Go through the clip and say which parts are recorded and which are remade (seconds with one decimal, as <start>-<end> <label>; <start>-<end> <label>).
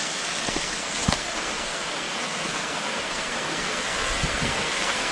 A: 0.0-5.1 remade